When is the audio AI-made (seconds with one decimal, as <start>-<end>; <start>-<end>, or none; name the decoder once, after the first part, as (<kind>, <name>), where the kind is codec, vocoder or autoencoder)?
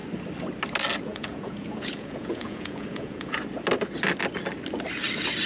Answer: 1.1-3.3 (vocoder, Vocos)